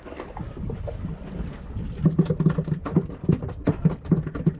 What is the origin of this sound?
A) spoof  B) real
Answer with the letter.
B